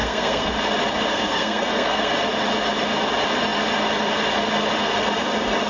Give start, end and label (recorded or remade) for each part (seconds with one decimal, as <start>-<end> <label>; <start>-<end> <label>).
0.0-0.5 remade; 0.5-1.1 recorded; 1.1-2.1 remade; 2.1-5.7 recorded